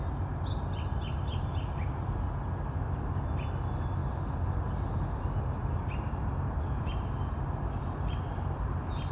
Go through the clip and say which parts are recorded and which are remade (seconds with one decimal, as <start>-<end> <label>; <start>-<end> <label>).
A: 0.0-9.1 recorded